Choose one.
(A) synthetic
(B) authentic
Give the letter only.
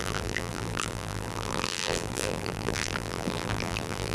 A